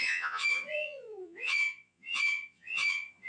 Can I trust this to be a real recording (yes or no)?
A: no